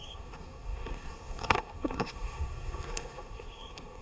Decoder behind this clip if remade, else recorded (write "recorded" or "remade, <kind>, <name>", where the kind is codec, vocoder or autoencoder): remade, codec, SNAC